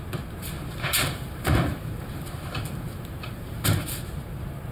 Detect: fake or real fake